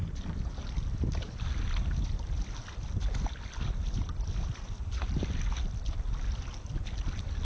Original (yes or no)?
yes